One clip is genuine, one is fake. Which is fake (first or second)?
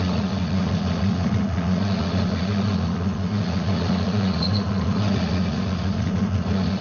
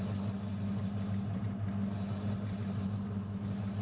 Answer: first